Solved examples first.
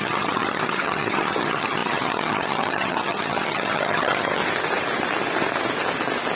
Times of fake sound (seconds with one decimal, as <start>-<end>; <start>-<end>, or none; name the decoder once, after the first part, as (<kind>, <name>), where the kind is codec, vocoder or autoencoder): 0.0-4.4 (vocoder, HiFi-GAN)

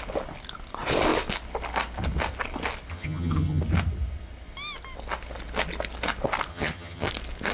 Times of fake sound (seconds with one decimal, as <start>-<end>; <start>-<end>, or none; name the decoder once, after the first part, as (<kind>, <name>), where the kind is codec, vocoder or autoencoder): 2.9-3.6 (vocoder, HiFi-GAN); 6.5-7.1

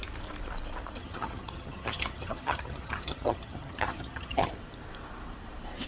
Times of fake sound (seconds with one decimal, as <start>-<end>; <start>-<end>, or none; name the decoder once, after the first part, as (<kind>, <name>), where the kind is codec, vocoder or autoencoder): 1.0-4.5 (vocoder, HiFi-GAN)

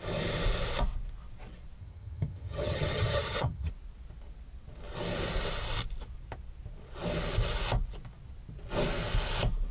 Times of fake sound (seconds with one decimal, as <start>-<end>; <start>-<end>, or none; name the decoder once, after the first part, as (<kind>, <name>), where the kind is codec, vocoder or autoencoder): 1.8-3.7 (vocoder, HiFi-GAN)

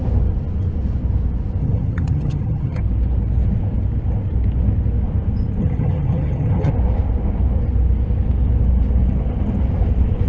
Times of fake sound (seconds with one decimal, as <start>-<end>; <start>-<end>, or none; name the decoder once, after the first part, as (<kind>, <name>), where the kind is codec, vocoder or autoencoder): 1.6-2.8 (vocoder, HiFi-GAN); 5.6-6.7

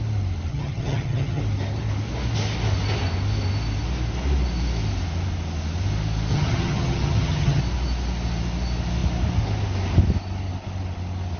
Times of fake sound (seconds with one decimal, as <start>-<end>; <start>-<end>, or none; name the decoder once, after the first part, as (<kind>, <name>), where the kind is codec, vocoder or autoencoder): 0.5-1.4 (vocoder, HiFi-GAN); 6.3-7.6

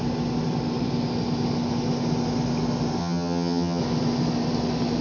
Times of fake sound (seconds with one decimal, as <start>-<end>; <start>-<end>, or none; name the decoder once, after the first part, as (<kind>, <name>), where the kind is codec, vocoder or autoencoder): 3.0-3.8 (vocoder, HiFi-GAN)